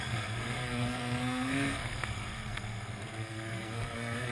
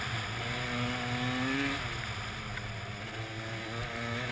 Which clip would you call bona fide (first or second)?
second